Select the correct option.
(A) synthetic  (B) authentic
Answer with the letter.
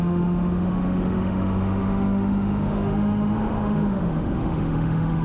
A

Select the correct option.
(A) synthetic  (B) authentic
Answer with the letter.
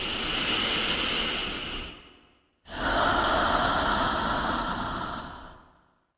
B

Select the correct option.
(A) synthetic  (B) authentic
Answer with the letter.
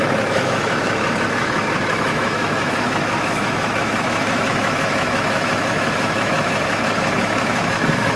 A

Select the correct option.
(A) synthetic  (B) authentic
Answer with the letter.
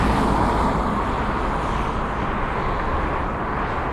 B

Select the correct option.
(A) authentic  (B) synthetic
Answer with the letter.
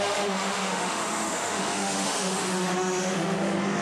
B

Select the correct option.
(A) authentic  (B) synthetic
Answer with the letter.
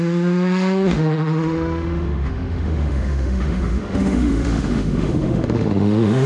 B